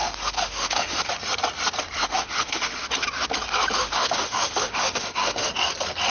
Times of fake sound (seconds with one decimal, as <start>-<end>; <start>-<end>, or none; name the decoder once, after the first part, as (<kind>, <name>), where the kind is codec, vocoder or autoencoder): 0.0-1.1 (autoencoder, DAC-VAE); 2.0-2.8; 3.8-5.5